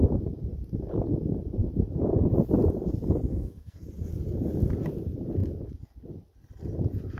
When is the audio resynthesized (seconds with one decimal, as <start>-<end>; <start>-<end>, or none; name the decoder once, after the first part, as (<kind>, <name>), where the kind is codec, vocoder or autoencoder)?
3.3-3.9 (codec, SNAC)